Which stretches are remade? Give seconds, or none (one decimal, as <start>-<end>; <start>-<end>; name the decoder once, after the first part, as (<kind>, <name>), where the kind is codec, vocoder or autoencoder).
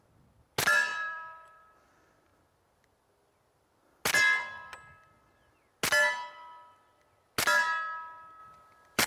0.9-1.9 (vocoder, BigVGAN v2); 8.4-9.1